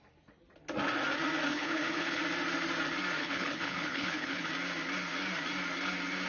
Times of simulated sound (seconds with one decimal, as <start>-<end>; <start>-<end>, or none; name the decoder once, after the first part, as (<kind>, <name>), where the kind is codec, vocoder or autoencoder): 1.5-2.2 (codec, HILCodec); 3.2-4.5